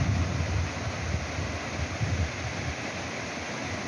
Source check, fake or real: real